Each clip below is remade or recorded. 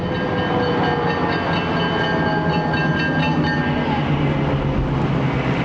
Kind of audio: recorded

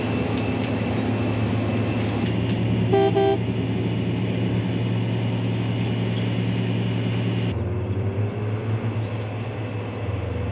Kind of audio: recorded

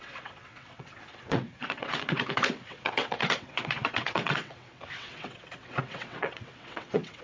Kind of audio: remade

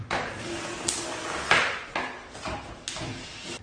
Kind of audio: recorded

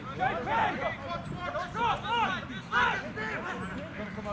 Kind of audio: recorded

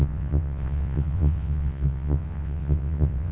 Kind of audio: remade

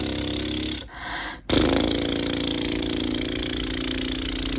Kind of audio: recorded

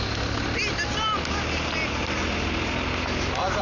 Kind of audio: recorded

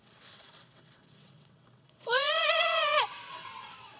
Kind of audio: remade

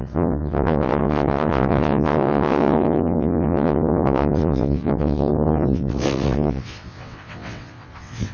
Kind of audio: remade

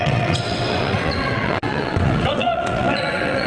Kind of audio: remade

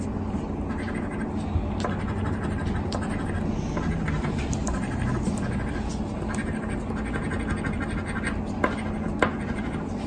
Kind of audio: recorded